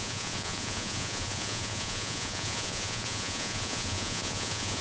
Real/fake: fake